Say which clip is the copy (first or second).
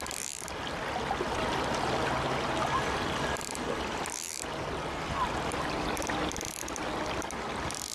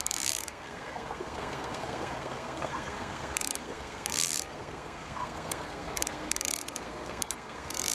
second